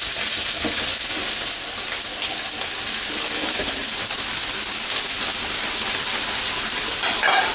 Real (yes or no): yes